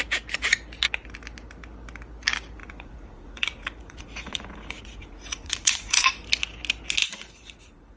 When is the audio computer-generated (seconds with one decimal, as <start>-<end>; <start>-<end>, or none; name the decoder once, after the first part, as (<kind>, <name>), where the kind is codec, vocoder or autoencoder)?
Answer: 2.6-6.1 (vocoder, Vocos); 7.0-8.0